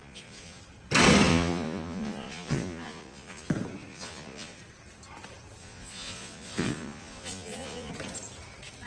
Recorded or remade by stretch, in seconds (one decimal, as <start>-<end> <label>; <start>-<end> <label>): 0.0-0.6 remade; 0.6-1.3 recorded; 1.3-3.5 remade; 3.5-3.9 recorded; 3.9-4.6 remade; 4.6-5.6 recorded; 5.6-7.9 remade; 7.9-8.9 recorded